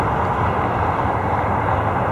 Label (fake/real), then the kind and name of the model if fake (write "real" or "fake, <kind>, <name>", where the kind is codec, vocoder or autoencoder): real